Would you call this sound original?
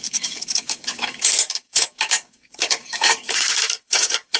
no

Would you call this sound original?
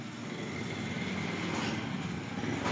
yes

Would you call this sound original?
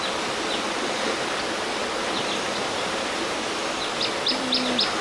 yes